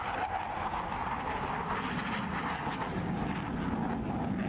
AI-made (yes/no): no